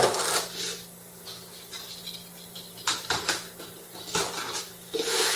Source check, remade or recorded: recorded